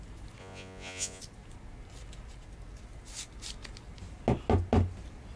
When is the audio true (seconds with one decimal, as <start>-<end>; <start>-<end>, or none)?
0.0-0.4; 1.2-5.4

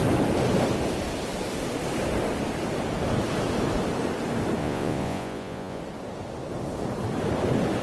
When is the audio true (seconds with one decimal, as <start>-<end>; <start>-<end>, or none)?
0.0-4.6; 5.8-7.8

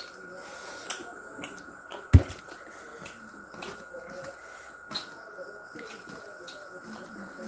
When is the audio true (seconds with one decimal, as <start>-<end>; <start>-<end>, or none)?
0.0-7.5

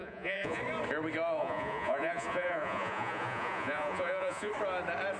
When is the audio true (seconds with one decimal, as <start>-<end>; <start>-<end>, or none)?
0.6-1.4; 4.5-5.2

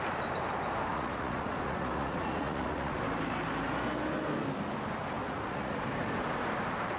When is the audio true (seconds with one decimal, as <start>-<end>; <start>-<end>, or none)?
0.0-0.9; 3.0-5.2; 5.8-7.0

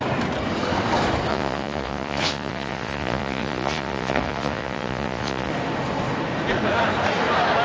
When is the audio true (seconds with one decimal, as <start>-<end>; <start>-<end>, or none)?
0.0-1.3; 5.5-7.6